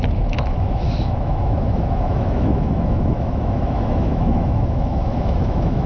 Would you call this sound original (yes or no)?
no